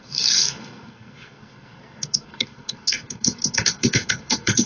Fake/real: fake